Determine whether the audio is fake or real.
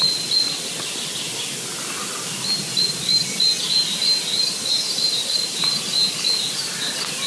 real